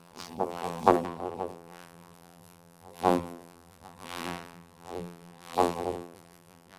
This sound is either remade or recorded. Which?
remade